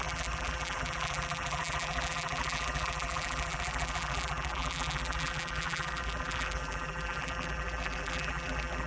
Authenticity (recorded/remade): remade